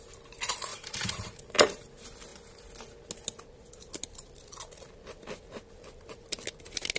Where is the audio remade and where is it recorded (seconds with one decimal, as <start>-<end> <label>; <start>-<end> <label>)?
0.0-0.7 recorded; 0.7-1.8 remade; 1.8-7.0 recorded